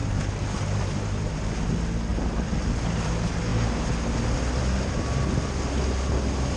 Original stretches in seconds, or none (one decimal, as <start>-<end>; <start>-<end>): 1.3-2.1; 3.1-6.6